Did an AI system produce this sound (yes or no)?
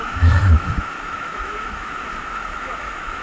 yes